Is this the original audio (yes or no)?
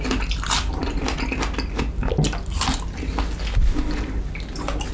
yes